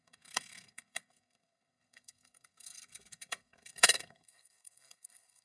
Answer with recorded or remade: remade